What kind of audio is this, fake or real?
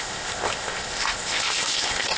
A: fake